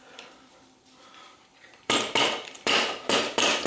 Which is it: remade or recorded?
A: remade